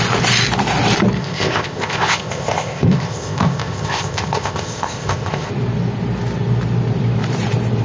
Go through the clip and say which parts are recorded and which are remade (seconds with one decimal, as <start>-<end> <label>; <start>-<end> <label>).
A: 0.0-1.2 recorded; 1.2-5.5 remade; 5.5-7.8 recorded